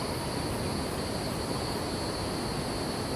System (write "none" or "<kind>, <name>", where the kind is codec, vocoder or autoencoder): none